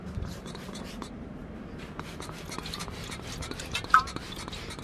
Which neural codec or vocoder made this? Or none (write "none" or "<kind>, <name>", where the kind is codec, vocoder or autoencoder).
vocoder, BigVGAN v2